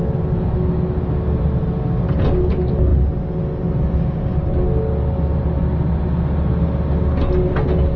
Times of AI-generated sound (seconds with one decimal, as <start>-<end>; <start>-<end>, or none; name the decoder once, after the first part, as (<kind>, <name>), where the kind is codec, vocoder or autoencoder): none